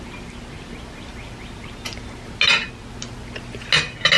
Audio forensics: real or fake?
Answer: real